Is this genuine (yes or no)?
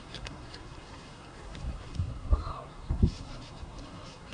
no